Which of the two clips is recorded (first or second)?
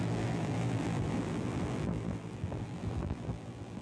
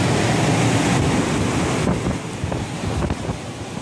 second